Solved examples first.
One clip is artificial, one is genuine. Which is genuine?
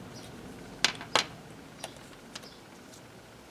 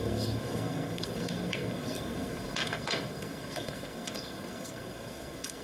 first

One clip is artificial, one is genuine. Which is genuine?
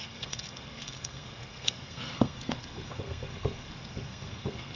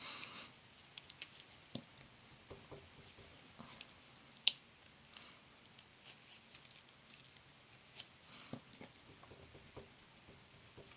second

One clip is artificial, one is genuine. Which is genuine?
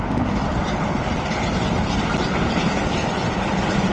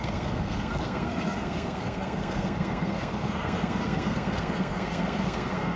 first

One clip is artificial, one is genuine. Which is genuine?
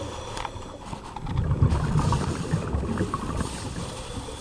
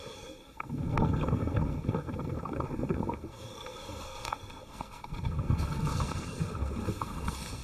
first